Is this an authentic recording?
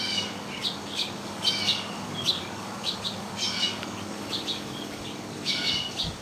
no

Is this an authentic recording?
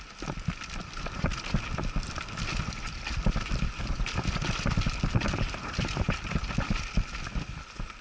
yes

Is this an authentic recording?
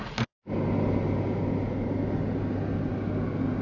yes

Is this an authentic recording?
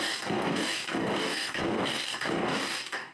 no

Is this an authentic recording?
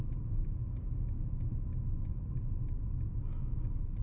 yes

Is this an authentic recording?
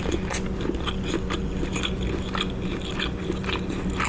yes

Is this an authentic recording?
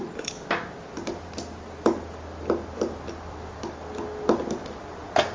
yes